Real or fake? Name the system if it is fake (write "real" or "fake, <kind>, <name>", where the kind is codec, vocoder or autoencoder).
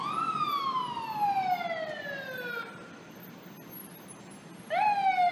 real